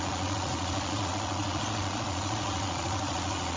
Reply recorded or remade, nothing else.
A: remade